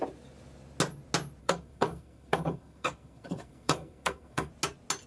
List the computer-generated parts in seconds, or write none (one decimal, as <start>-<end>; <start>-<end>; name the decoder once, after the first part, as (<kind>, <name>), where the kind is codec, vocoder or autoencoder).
1.4-4.5 (codec, SNAC)